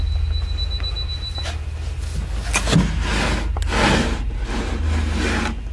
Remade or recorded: recorded